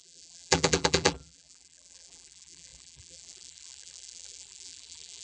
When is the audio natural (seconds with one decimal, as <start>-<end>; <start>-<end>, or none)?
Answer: none